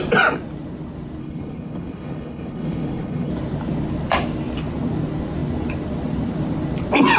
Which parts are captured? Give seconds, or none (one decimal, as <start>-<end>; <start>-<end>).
0.0-1.2; 3.3-7.2